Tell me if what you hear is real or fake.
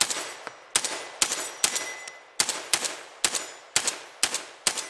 real